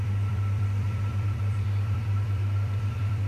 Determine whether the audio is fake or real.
fake